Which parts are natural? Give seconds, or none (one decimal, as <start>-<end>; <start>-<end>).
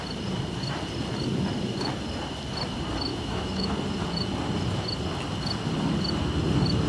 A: 0.0-3.1; 3.7-6.9